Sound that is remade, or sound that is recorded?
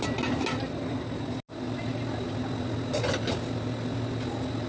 recorded